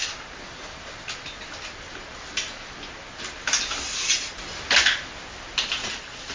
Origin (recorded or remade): recorded